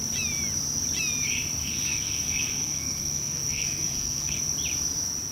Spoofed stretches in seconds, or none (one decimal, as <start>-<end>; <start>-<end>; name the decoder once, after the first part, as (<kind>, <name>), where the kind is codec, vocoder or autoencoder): 1.6-4.4 (codec, SNAC)